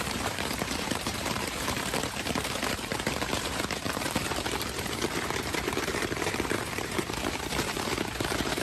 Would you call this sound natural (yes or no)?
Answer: no